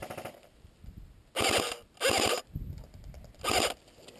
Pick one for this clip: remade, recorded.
recorded